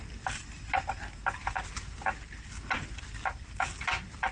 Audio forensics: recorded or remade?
recorded